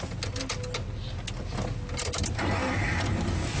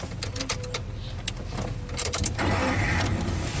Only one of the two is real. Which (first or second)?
first